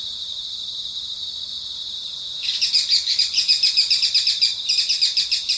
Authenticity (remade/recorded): recorded